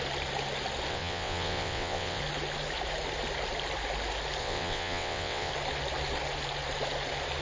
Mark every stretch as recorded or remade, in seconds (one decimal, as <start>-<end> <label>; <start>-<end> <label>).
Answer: 0.0-0.9 recorded; 0.9-2.2 remade; 2.2-4.4 recorded; 4.4-5.5 remade; 5.5-7.4 recorded